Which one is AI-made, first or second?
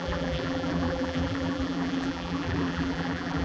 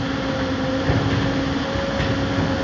first